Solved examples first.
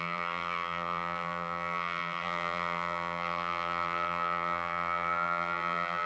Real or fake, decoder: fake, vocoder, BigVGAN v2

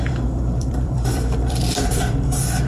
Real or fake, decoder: fake, vocoder, BigVGAN v2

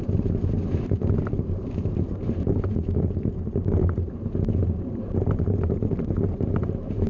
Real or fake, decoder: fake, vocoder, BigVGAN v2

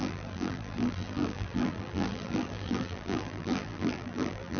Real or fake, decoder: fake, vocoder, BigVGAN v2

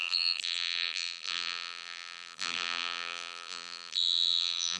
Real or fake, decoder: fake, vocoder, BigVGAN v2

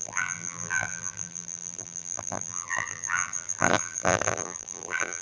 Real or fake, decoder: fake, vocoder, BigVGAN v2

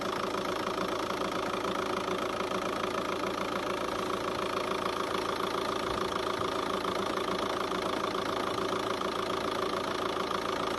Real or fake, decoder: real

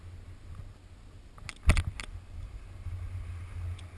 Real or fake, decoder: real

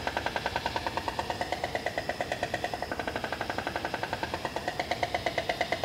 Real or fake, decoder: fake, vocoder, BigVGAN v2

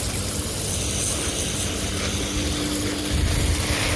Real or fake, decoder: real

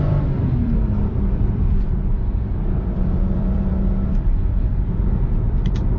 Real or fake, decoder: fake, vocoder, BigVGAN v2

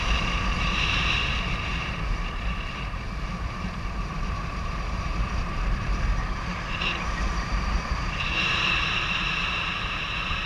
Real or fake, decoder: fake, vocoder, BigVGAN v2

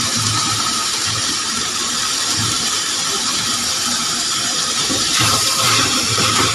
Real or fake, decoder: fake, vocoder, BigVGAN v2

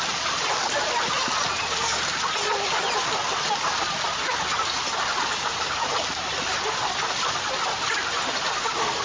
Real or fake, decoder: real